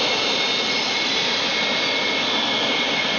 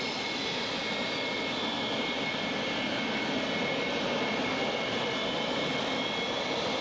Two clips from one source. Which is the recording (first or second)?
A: second